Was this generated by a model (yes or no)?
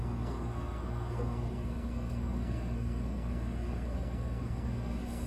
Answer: yes